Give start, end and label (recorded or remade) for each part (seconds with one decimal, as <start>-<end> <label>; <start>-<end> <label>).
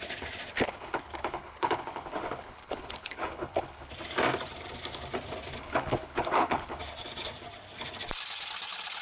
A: 0.0-0.5 recorded; 0.5-3.9 remade; 3.9-5.6 recorded; 5.6-6.8 remade; 6.8-9.0 recorded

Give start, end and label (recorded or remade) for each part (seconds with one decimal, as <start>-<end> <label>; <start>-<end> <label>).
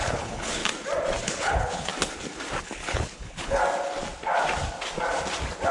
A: 0.0-0.6 remade; 0.6-1.2 recorded; 1.2-1.9 remade; 1.9-2.6 recorded; 2.6-3.6 remade; 3.6-5.7 recorded